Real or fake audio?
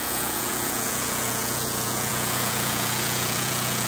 fake